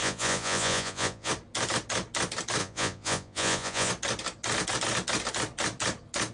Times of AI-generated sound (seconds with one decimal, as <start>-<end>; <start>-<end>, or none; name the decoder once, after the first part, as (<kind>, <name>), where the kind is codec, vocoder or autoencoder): 0.0-1.3 (vocoder, Vocos); 2.6-3.9